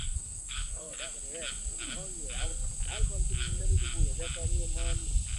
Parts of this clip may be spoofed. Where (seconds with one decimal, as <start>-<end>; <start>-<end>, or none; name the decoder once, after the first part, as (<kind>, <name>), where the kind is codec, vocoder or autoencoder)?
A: 0.0-1.0 (codec, SNAC)